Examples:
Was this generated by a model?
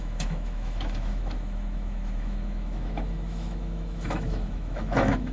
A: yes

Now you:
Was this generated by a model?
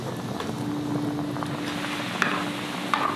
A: no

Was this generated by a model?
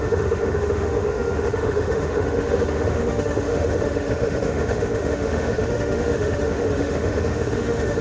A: yes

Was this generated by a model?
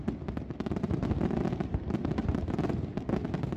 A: no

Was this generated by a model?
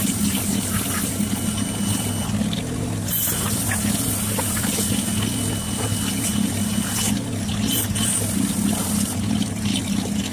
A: no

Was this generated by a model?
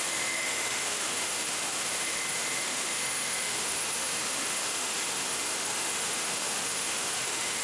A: yes